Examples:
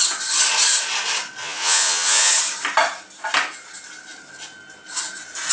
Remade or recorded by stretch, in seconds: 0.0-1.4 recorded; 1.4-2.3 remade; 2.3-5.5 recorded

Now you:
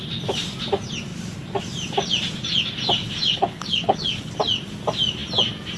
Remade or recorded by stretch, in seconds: 0.0-3.0 recorded; 3.0-4.3 remade; 4.3-5.8 recorded

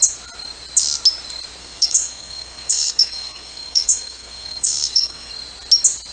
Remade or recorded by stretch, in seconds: 0.0-1.6 recorded; 1.6-5.3 remade; 5.3-6.1 recorded

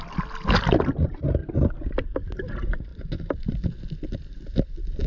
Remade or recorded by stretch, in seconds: 0.0-5.1 recorded

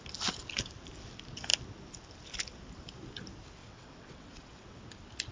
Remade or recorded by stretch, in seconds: 0.0-3.6 recorded; 3.6-4.8 remade; 4.8-5.3 recorded

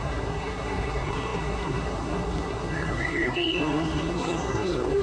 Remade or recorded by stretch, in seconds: 0.0-5.0 remade

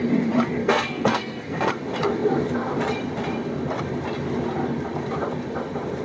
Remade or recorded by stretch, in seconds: 0.0-0.6 recorded; 0.6-1.7 remade; 1.7-6.0 recorded